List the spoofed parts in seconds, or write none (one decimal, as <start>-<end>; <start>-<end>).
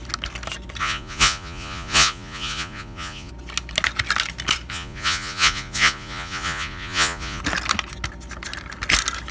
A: 0.8-3.3; 4.7-7.4